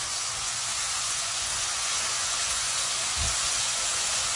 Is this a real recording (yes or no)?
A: no